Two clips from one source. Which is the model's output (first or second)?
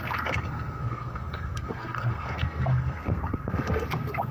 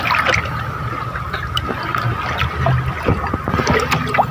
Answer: first